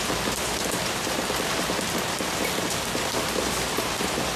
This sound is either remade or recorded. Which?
remade